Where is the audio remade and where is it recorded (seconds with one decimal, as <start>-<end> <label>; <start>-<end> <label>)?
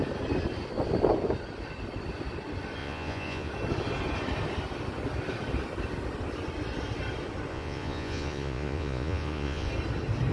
0.0-2.8 recorded; 2.8-3.5 remade; 3.5-7.5 recorded; 7.5-9.7 remade; 9.7-10.3 recorded